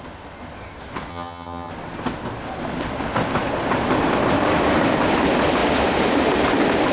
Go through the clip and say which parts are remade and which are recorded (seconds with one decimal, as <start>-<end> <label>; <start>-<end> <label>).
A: 0.0-1.1 recorded; 1.1-1.7 remade; 1.7-6.9 recorded